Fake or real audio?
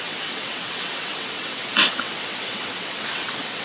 fake